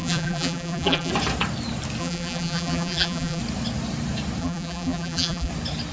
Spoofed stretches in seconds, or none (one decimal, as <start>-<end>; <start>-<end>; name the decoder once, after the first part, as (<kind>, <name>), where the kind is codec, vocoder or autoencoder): 0.0-1.1 (vocoder, BigVGAN v2); 2.0-3.4; 4.4-5.5